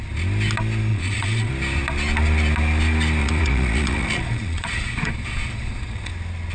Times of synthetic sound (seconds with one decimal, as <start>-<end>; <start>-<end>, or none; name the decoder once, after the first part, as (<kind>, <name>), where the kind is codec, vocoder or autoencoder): 0.9-1.5 (vocoder, Vocos); 3.2-6.1